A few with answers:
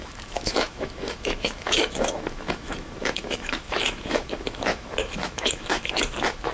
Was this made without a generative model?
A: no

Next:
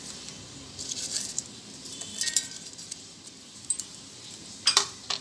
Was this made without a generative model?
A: no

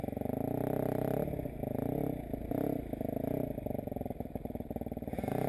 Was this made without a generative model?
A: yes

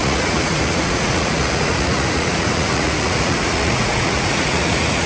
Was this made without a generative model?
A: no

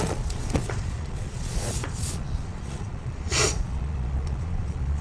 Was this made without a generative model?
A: no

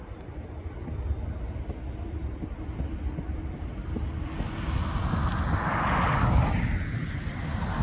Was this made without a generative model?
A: yes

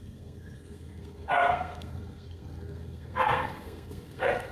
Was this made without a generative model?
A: no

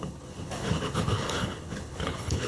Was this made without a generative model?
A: no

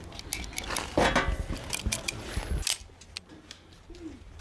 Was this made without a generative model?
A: yes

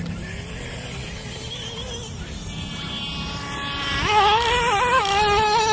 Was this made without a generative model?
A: yes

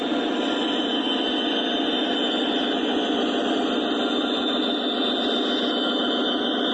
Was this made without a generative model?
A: yes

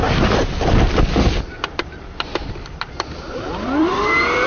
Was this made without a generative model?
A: no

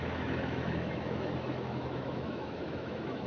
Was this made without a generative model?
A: no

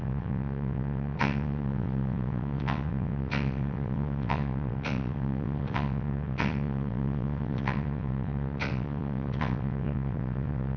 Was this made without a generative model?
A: no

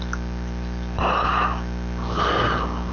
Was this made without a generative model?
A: yes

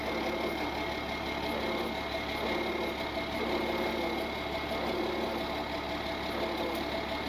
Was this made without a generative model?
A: yes